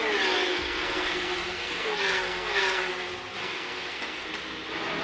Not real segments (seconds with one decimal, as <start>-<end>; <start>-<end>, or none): 0.5-2.9; 3.4-4.3